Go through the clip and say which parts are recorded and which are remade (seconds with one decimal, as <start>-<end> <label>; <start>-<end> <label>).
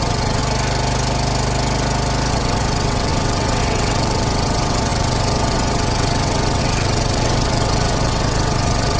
0.0-0.4 remade; 0.4-2.3 recorded; 2.3-9.0 remade